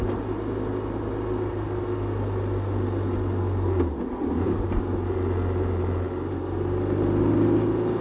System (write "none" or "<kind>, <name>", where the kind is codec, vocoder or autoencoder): none